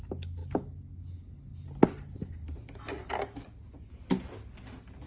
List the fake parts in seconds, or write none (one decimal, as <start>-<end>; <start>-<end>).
none